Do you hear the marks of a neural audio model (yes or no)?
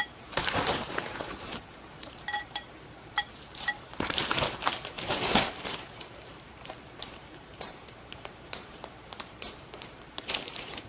yes